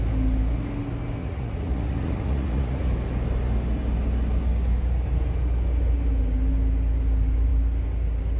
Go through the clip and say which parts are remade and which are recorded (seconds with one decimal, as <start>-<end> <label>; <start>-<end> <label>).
0.0-1.2 recorded; 1.2-2.9 remade; 2.9-8.4 recorded

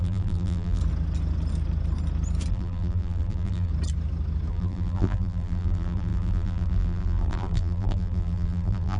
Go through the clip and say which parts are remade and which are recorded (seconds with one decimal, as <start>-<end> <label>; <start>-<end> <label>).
0.0-0.8 remade; 0.8-2.5 recorded; 2.5-3.7 remade; 3.7-4.5 recorded; 4.5-9.0 remade